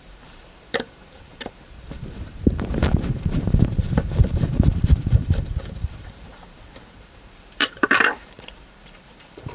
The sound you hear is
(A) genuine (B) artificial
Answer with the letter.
B